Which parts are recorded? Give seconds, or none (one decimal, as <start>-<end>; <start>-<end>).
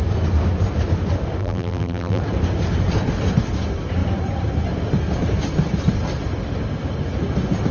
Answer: 0.0-1.4; 2.2-7.7